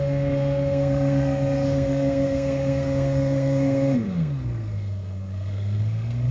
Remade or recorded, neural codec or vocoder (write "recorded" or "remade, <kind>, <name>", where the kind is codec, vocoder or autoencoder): remade, codec, SNAC